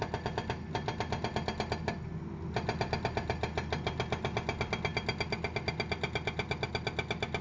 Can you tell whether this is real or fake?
real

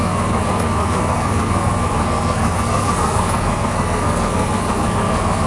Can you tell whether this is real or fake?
fake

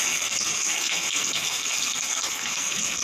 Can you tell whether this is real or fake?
fake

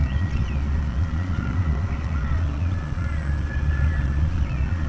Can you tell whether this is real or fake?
fake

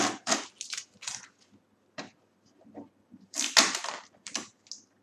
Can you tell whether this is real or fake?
real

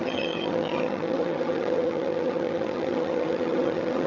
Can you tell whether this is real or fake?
fake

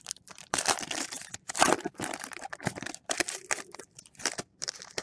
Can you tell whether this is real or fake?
fake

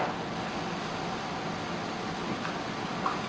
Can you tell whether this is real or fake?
real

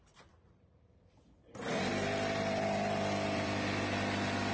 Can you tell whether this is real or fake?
fake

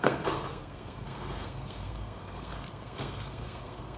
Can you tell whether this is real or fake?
fake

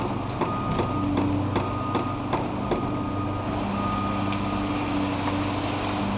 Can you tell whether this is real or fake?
real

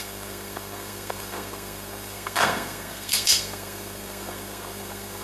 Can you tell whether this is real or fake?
fake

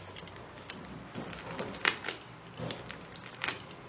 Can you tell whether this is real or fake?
real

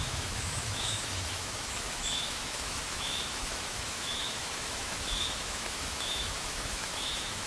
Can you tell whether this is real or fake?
fake